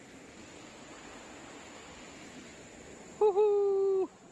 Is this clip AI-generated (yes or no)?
no